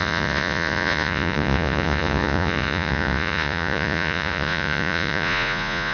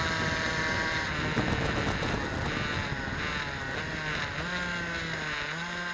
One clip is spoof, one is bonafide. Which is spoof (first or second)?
first